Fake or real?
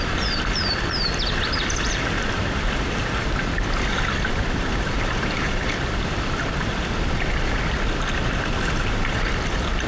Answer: fake